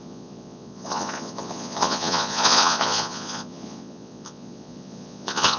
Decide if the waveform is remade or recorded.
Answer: remade